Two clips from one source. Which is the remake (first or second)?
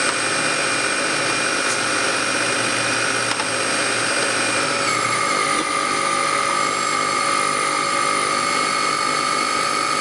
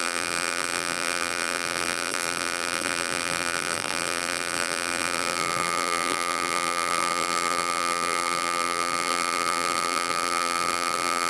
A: second